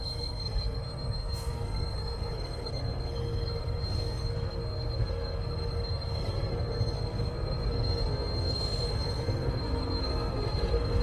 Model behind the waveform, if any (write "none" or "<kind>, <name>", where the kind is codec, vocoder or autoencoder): codec, SNAC